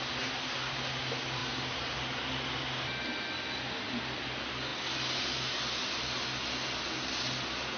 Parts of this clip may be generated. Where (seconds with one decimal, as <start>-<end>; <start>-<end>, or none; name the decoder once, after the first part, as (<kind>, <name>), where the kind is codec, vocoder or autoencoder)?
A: none